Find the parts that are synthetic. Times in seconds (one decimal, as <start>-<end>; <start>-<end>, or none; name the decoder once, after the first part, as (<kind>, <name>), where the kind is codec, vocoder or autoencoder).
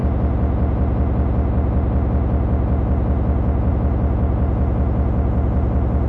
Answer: none